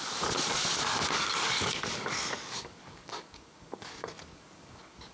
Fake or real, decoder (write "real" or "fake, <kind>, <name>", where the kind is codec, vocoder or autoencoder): fake, codec, DAC